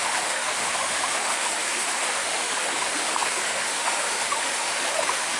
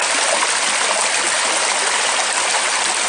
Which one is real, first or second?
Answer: second